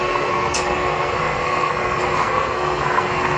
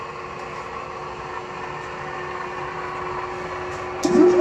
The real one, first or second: second